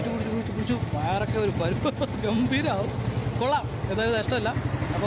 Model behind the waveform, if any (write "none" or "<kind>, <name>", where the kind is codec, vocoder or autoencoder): none